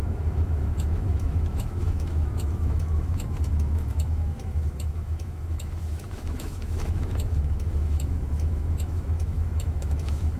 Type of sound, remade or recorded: remade